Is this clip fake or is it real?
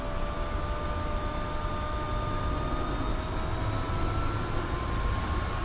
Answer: real